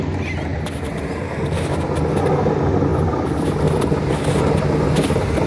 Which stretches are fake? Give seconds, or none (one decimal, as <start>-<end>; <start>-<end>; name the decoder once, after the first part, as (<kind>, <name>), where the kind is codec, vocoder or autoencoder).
none